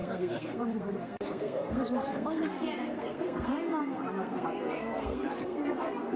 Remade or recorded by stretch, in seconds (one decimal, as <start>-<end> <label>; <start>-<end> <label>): 0.0-6.2 remade